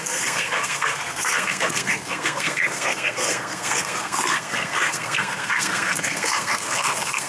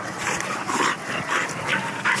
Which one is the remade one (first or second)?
first